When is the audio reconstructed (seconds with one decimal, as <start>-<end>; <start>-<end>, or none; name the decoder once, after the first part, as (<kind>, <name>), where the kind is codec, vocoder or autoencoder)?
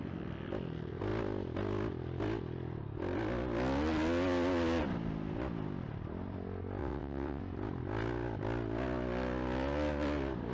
6.8-7.4 (vocoder, WaveNeXt)